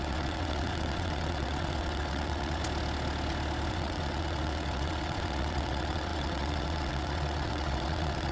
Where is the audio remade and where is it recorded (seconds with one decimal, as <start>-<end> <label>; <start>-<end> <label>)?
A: 0.0-2.6 remade; 2.6-3.7 recorded; 3.7-8.3 remade